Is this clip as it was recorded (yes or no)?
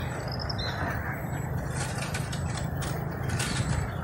no